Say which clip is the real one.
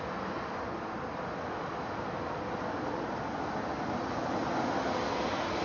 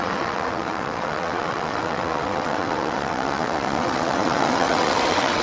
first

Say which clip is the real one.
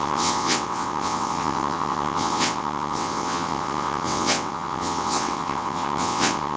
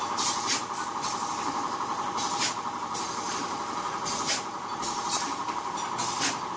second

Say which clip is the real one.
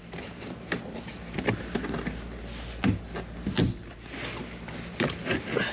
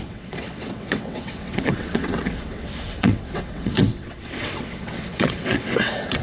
first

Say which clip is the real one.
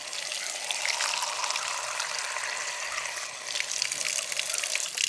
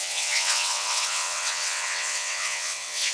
first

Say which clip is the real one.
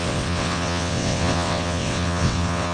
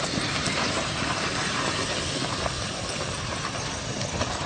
second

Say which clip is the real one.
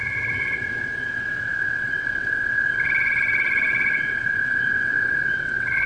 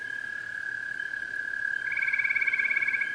second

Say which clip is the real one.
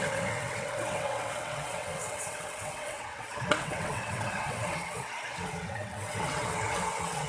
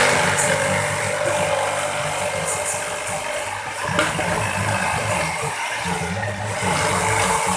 second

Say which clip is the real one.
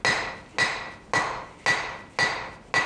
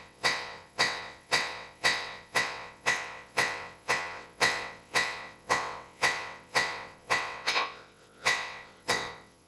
first